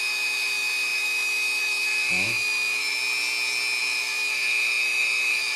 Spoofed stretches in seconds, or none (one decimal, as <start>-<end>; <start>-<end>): 0.0-3.0; 3.8-5.6